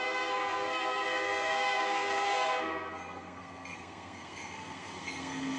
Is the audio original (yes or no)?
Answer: no